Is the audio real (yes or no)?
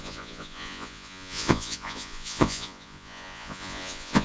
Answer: no